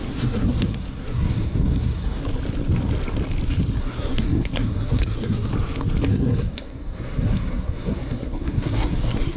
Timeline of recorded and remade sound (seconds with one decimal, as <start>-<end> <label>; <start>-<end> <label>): 0.0-2.2 remade; 2.2-3.8 recorded; 3.8-5.5 remade; 5.5-6.1 recorded; 6.1-9.4 remade